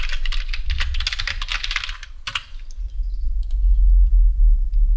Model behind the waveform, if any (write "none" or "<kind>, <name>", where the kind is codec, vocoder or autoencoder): none